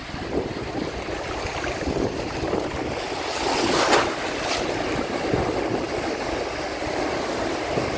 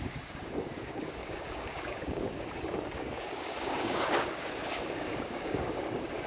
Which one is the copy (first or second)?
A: second